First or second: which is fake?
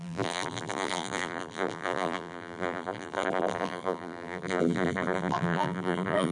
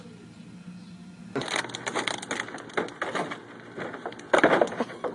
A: first